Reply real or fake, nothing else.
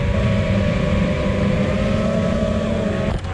real